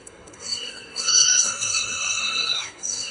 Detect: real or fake fake